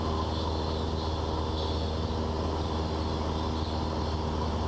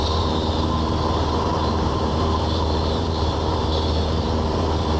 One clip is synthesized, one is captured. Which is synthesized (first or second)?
second